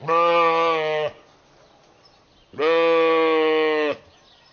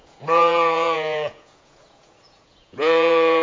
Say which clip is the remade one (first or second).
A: second